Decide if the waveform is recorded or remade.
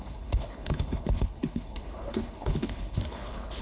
remade